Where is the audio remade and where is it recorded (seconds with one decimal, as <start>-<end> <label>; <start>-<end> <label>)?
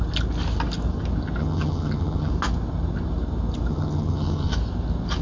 0.0-1.4 recorded; 1.4-2.3 remade; 2.3-3.7 recorded; 3.7-4.5 remade; 4.5-5.2 recorded